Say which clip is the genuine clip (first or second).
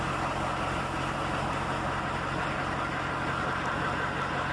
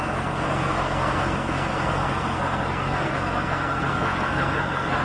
first